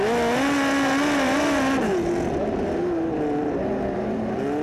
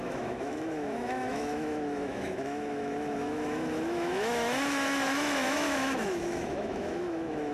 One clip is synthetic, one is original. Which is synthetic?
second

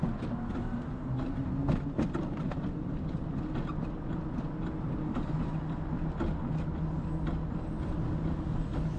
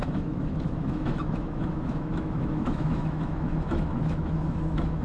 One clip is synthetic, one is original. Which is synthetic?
second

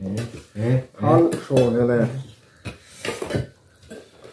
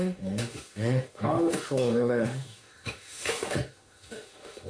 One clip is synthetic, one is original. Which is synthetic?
second